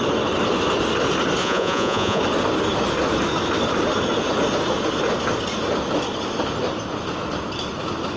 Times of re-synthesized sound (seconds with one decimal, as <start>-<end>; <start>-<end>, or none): 1.4-2.2